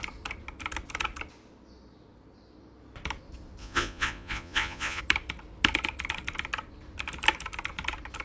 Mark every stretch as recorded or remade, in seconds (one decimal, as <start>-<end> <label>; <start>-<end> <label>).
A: 0.0-3.6 recorded; 3.6-5.0 remade; 5.0-8.2 recorded